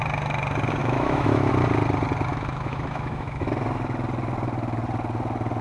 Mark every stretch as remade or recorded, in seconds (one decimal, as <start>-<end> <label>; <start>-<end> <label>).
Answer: 0.0-0.8 recorded; 0.8-1.5 remade; 1.5-2.3 recorded; 2.3-3.5 remade; 3.5-5.6 recorded